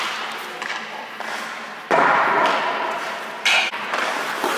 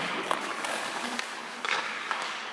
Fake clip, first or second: second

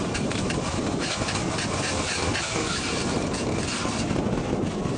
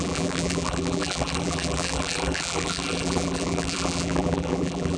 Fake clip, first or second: second